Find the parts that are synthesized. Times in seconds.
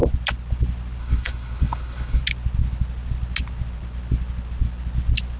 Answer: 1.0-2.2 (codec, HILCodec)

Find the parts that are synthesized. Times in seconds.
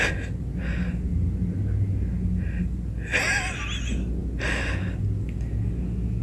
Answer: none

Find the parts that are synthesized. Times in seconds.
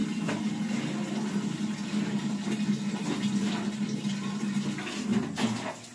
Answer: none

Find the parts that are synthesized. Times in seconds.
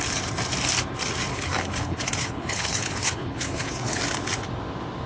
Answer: 1.3-4.0 (codec, HILCodec)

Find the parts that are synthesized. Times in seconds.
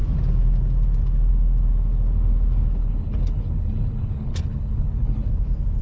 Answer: 2.8-5.3 (codec, HILCodec)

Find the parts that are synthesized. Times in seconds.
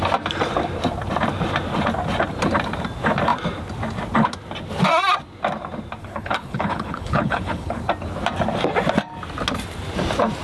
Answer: 6.0-7.8 (codec, HILCodec)